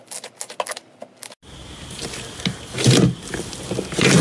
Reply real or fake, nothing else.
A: real